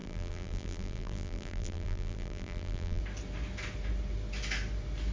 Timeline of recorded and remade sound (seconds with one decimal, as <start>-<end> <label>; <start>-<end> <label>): 0.0-3.0 remade; 3.0-5.1 recorded